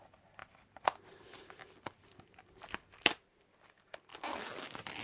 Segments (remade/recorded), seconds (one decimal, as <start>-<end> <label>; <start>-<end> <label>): 0.0-5.0 recorded